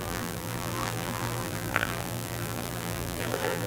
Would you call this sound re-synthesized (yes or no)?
yes